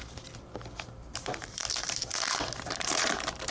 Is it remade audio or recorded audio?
remade